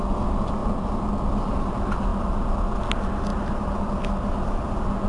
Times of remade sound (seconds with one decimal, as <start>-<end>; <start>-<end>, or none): 0.6-1.7; 3.3-3.8